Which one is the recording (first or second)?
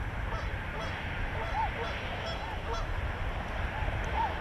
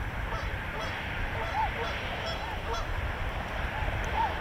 first